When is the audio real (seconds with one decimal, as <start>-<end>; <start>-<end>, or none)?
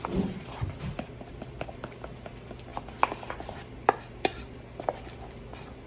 0.0-5.9